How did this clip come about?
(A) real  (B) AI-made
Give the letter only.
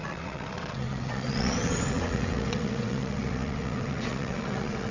B